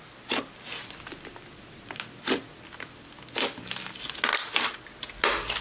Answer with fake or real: real